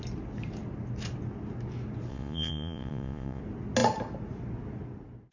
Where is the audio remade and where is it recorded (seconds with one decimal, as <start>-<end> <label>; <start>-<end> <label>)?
0.0-2.1 recorded; 2.1-3.4 remade; 3.4-5.3 recorded